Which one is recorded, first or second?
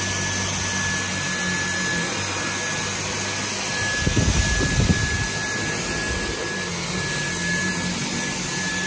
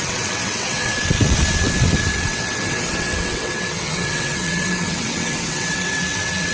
first